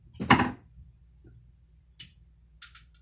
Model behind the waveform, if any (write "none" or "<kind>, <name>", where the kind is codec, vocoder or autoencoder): none